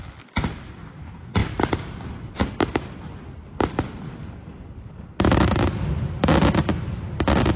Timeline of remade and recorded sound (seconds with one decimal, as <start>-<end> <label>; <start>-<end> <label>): 0.0-7.6 recorded